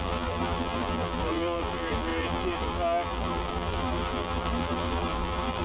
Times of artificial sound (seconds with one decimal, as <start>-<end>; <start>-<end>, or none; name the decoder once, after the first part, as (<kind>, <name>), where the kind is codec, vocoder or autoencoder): 0.0-5.6 (vocoder, BigVGAN v2)